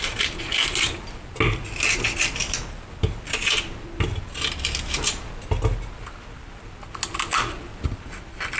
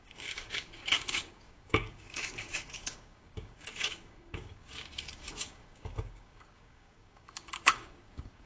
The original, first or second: first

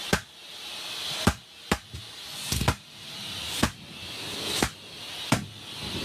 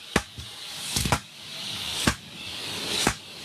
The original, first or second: first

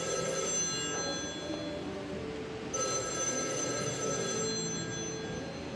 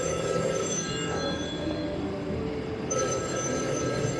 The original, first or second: first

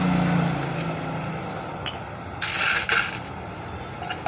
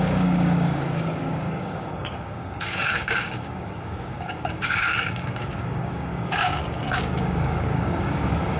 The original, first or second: first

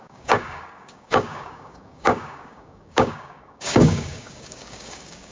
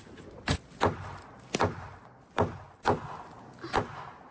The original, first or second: second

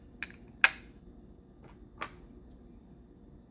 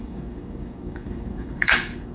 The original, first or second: first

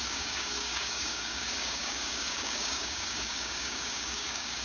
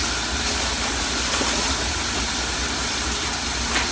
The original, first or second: second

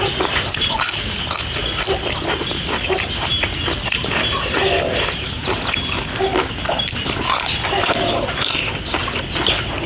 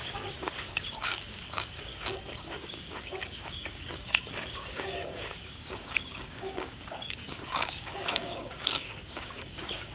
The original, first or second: first